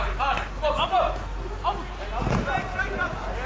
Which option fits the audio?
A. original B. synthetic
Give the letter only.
A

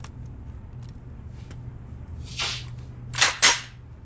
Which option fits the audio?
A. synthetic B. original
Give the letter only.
B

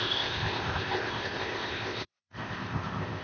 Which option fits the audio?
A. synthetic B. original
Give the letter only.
A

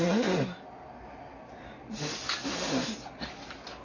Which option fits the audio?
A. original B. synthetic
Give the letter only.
A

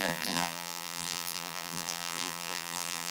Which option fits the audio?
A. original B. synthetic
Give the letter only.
B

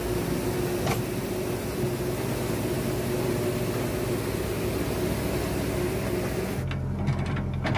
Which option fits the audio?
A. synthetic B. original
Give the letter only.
B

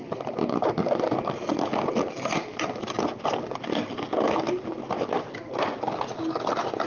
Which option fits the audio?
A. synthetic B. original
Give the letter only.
B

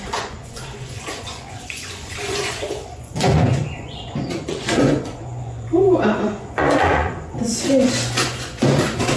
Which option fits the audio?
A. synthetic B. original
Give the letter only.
A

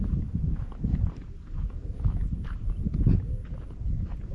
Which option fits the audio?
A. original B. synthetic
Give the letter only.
A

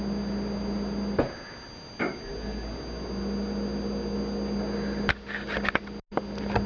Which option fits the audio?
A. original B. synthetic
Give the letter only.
A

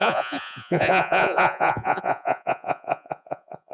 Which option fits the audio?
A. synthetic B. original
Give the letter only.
A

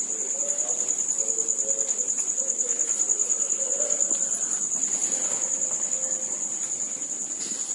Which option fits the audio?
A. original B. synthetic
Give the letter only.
A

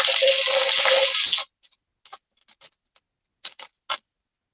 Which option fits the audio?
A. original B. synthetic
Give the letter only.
A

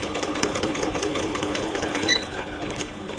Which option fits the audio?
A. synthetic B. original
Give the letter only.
A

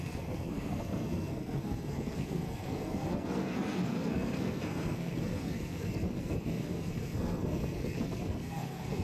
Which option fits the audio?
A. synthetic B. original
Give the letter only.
A